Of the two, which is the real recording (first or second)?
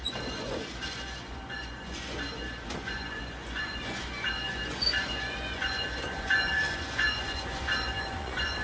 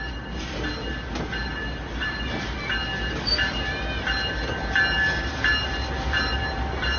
second